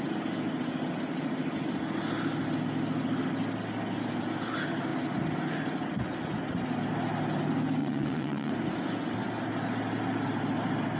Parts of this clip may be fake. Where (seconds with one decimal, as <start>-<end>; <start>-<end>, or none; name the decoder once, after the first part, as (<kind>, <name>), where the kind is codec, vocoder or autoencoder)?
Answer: 7.8-8.5 (vocoder, WaveNeXt)